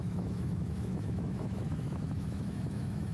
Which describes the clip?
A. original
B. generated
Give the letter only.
B